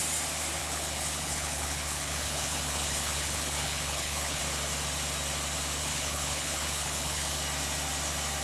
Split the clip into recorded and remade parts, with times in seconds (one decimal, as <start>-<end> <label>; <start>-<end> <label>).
0.0-0.6 recorded; 0.6-4.4 remade; 4.4-5.8 recorded; 5.8-7.3 remade; 7.3-8.4 recorded